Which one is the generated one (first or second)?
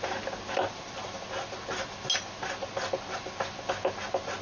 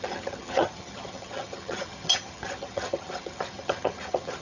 second